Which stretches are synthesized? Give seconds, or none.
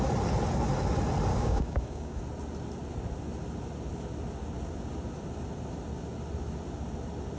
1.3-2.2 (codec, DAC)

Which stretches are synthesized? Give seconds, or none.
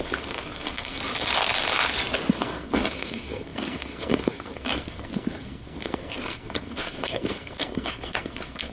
0.0-1.0 (codec, SNAC); 2.3-8.7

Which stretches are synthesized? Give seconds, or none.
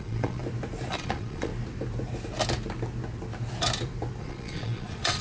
0.0-0.4 (vocoder, Vocos); 0.9-1.5; 4.2-5.2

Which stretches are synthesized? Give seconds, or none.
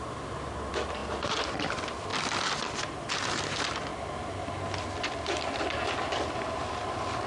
0.0-2.1 (vocoder, BigVGAN v2); 3.4-3.9; 4.9-7.3